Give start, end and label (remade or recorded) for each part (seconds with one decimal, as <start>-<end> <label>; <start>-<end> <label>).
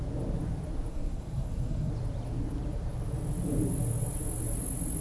0.0-0.9 recorded; 0.9-1.9 remade; 1.9-5.0 recorded